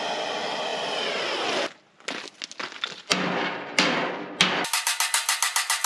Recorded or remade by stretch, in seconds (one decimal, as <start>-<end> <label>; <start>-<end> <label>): 0.0-5.9 recorded